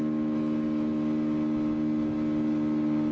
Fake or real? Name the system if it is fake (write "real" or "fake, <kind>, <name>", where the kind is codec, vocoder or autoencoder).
real